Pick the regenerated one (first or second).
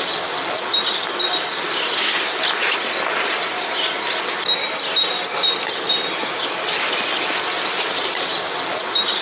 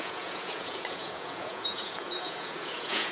second